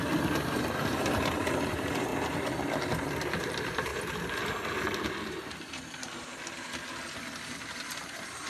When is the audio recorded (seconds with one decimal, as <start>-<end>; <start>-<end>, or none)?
2.1-3.4; 3.9-5.0; 6.3-8.0